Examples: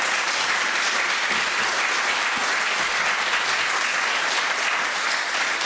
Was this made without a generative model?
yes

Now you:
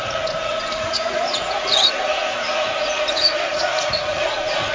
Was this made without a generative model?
no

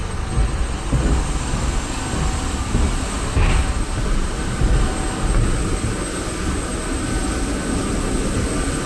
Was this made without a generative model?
yes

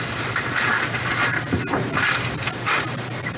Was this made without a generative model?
yes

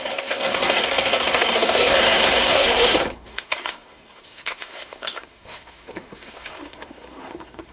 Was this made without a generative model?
no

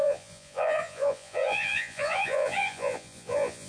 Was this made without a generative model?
no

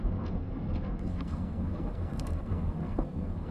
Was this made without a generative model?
no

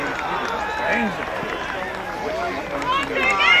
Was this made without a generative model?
yes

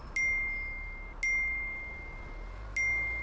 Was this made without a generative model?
yes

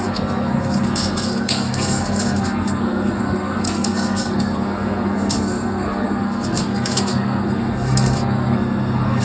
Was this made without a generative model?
no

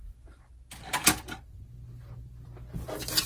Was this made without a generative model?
yes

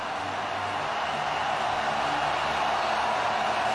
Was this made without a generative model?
yes